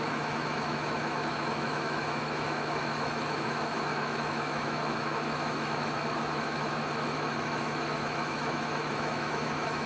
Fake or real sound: fake